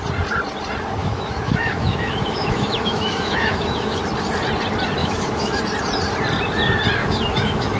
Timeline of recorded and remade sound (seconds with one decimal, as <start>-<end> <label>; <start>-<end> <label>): 0.0-1.0 recorded; 1.0-4.0 remade; 4.0-5.0 recorded; 5.0-5.6 remade; 5.6-7.0 recorded; 7.0-7.8 remade